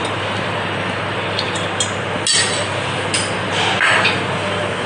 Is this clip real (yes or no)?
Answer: yes